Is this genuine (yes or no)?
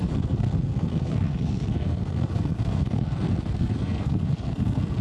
no